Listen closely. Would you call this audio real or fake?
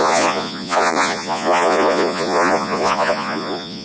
fake